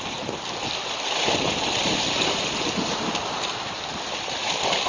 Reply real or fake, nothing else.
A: real